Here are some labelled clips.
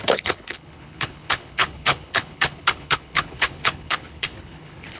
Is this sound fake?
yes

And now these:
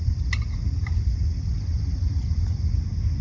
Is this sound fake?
no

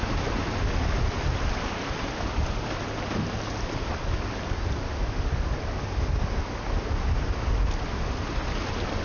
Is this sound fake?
no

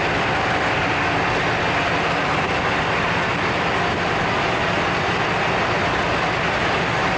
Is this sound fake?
no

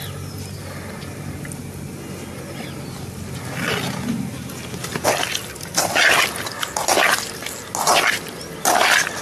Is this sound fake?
no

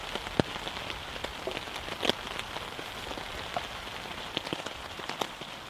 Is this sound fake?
no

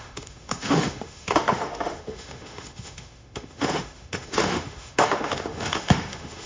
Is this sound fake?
yes